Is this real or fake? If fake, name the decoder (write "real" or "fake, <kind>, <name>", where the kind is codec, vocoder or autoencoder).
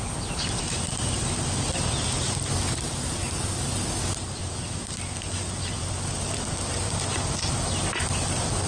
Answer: real